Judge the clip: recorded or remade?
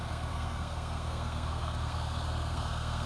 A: remade